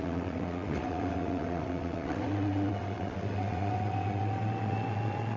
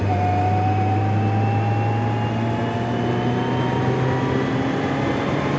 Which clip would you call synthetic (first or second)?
first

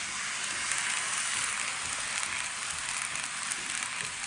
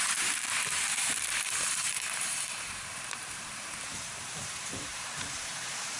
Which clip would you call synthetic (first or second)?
second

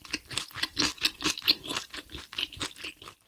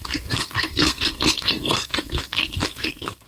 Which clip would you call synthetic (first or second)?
second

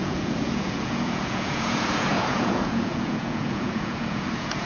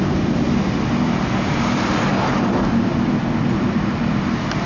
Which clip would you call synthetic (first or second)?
first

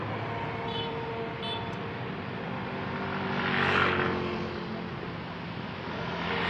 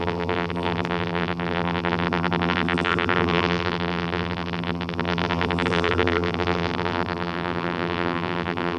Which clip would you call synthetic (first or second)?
second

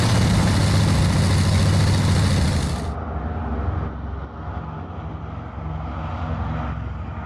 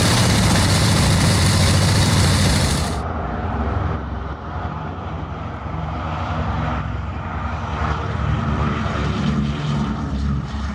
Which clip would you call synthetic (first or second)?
second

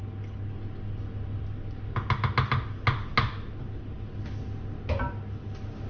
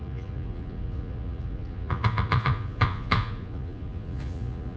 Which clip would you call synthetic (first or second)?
second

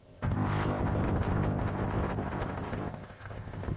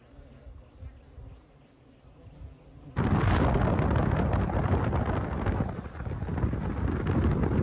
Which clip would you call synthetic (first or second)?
first